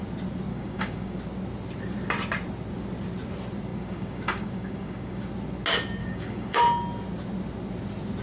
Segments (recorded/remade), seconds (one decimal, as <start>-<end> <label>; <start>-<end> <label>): 0.0-0.5 recorded; 0.5-1.2 remade; 1.2-3.7 recorded; 3.7-5.3 remade; 5.3-6.0 recorded; 6.0-6.6 remade; 6.6-8.2 recorded